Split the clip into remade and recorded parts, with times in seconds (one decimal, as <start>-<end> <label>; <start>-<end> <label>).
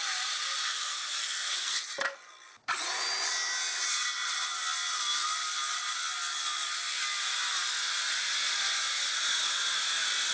0.0-0.6 recorded; 0.6-1.8 remade; 1.8-10.3 recorded